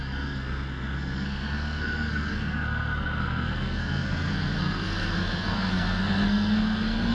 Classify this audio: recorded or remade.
remade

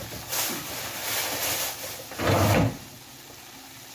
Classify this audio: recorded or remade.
recorded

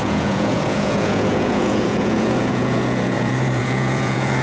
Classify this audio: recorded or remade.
remade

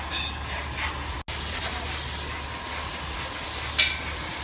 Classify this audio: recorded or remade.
recorded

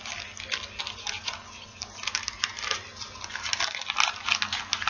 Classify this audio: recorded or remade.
recorded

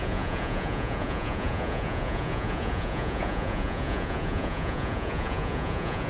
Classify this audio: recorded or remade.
remade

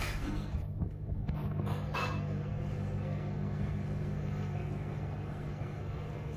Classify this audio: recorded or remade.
remade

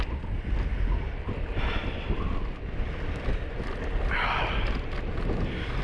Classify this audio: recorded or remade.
recorded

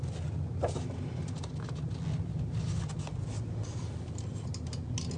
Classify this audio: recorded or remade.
recorded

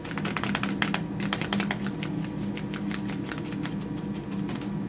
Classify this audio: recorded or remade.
recorded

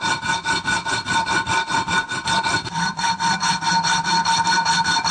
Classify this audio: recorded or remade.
recorded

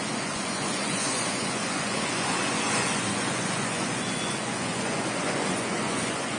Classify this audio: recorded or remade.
remade